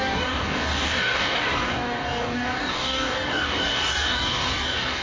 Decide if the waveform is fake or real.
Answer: fake